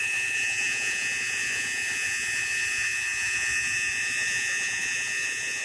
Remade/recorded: remade